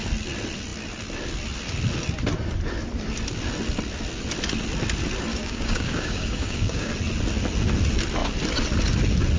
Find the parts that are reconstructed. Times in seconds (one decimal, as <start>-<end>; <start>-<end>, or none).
5.3-6.9